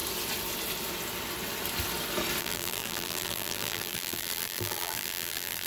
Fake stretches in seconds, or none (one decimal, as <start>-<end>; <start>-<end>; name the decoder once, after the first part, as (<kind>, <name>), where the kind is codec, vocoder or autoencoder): 2.4-5.7 (vocoder, BigVGAN v2)